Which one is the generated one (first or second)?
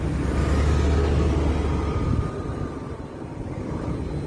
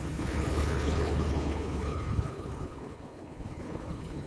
second